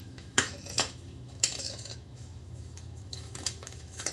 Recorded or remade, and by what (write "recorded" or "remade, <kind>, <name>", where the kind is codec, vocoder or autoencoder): remade, autoencoder, DAC-VAE